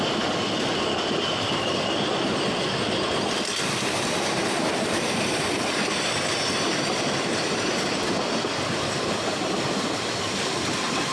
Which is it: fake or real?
real